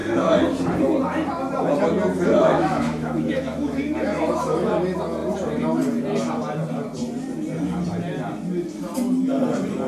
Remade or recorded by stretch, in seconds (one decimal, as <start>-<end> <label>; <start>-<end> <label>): 0.0-2.4 recorded; 2.4-4.7 remade; 4.7-9.9 recorded